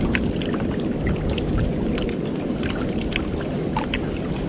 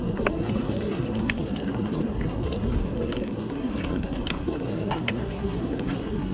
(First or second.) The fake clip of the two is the second